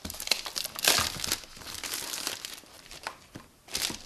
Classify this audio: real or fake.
real